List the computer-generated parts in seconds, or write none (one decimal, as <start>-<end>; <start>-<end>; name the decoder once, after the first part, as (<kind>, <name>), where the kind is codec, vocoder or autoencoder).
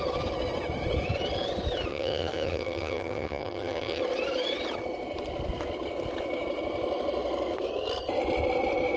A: 1.9-4.0 (vocoder, HiFi-GAN)